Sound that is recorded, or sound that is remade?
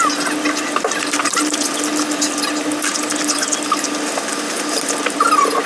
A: recorded